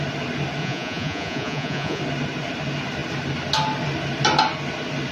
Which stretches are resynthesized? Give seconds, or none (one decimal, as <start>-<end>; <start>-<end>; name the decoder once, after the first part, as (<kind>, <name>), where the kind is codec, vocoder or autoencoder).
0.6-2.0 (vocoder, Vocos)